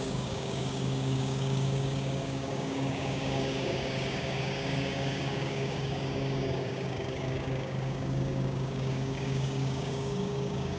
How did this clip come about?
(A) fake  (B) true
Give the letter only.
A